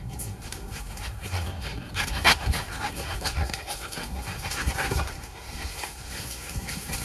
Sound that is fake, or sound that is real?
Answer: fake